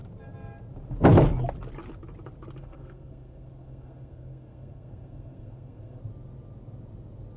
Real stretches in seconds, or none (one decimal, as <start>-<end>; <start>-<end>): 0.0-2.6; 6.0-7.4